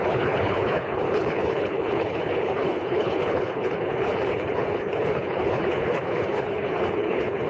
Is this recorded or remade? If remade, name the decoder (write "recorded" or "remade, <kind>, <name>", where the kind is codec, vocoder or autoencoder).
remade, codec, HILCodec